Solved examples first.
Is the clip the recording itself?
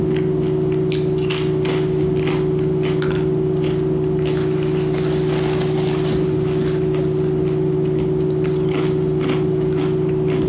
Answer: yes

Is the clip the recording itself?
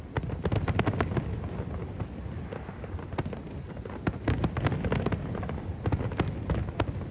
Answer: yes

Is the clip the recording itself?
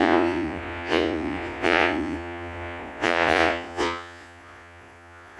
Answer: no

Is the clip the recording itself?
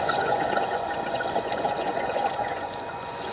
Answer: no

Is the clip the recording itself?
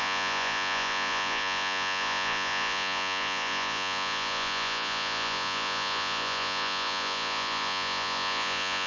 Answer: no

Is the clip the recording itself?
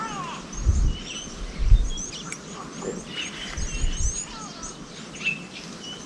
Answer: yes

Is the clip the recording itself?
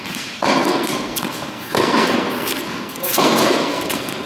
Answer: no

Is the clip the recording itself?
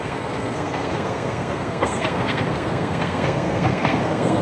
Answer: no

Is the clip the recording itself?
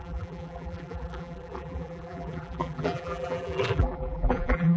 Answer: no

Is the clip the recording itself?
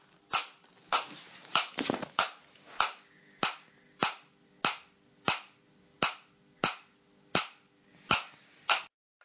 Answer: yes